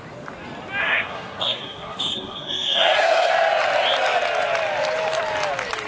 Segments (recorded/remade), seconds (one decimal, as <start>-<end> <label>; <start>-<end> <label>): 0.0-0.8 recorded; 0.8-3.3 remade; 3.3-5.9 recorded